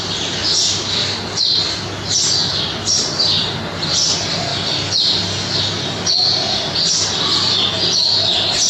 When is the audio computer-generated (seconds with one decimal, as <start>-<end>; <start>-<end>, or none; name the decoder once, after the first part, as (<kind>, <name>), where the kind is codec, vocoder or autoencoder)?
none